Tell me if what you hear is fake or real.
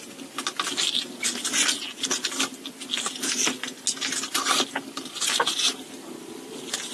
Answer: real